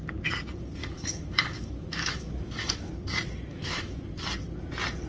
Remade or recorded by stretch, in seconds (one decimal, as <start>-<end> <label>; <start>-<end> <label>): 0.0-0.8 recorded; 0.8-2.9 remade; 2.9-3.5 recorded; 3.5-4.0 remade; 4.0-5.1 recorded